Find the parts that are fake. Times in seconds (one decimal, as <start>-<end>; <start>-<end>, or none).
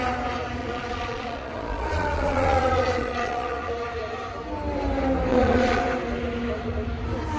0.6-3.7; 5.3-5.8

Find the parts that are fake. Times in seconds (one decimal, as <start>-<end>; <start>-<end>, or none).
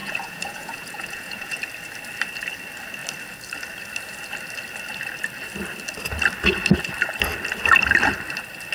0.0-1.6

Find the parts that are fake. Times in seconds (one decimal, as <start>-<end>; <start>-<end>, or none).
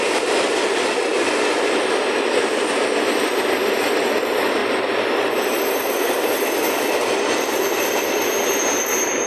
none